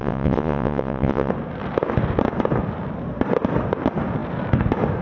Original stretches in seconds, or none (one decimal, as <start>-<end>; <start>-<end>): 1.3-5.0